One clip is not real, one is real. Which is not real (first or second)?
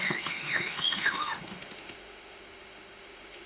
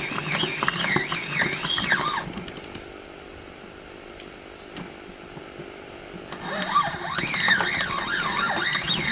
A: first